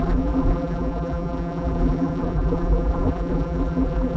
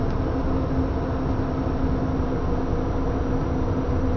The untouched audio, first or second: second